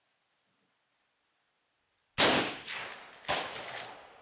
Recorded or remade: recorded